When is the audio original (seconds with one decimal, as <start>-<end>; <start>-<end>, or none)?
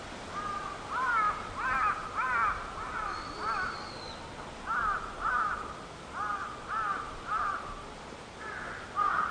0.0-9.3